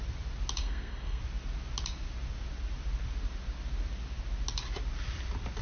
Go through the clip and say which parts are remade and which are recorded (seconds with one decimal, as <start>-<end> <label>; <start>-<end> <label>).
0.0-0.6 recorded; 0.6-1.2 remade; 1.2-5.6 recorded